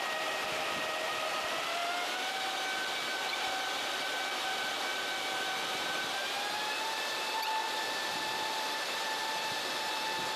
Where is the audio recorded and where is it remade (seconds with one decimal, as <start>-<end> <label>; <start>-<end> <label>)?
0.0-1.8 remade; 1.8-3.7 recorded; 3.7-10.4 remade

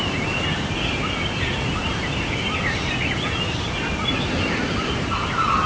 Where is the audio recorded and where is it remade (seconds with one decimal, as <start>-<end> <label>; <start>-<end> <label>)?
0.0-5.7 recorded